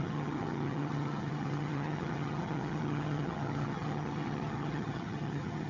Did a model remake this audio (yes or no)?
yes